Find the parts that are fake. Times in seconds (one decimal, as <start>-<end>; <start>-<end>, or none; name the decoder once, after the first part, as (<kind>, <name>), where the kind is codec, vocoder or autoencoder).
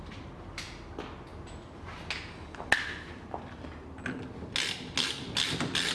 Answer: none